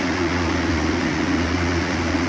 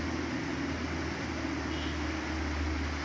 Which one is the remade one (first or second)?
first